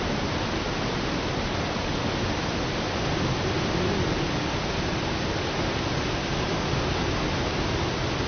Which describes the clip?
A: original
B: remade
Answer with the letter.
A